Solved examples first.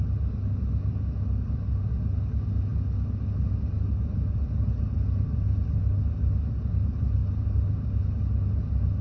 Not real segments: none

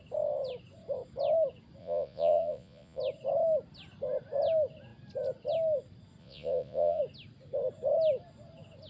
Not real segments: 1.8-3.0 (vocoder, Vocos); 6.2-7.0